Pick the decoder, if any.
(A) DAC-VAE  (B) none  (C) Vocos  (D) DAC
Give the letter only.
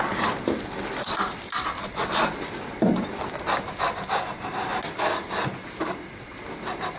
B